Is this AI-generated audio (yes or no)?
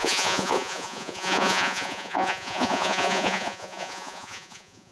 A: yes